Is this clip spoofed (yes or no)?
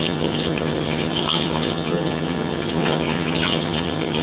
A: yes